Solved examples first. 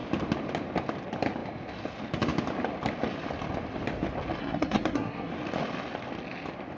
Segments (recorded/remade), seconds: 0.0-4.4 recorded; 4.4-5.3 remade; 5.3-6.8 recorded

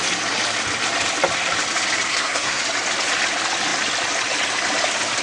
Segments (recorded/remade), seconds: 0.0-2.1 recorded; 2.1-2.6 remade; 2.6-5.2 recorded